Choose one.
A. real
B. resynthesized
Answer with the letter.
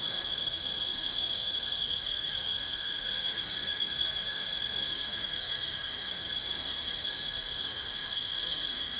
B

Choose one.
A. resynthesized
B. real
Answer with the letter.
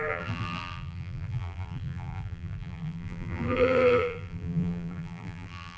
A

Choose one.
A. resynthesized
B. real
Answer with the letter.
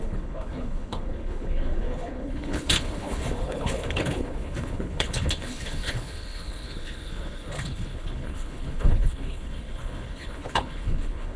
A